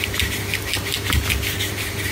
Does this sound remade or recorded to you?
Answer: recorded